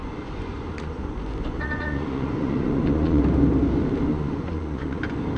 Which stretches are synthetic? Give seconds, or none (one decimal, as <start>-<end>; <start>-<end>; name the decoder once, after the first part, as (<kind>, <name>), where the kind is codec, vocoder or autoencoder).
0.0-3.2 (vocoder, Vocos); 4.1-5.0